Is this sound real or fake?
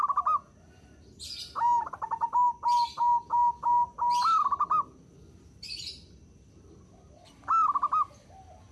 real